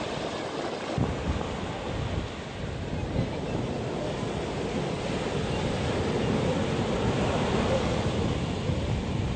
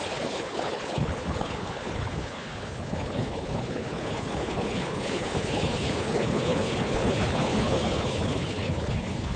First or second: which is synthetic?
second